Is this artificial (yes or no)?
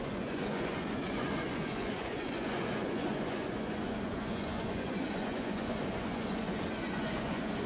yes